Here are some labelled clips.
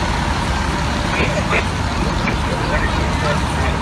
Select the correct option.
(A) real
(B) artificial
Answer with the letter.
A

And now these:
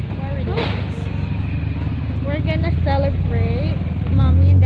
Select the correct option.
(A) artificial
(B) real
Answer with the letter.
B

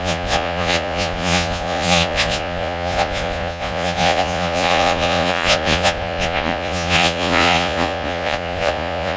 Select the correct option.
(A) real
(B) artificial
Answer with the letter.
B